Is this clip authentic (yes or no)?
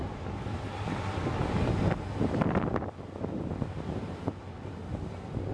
yes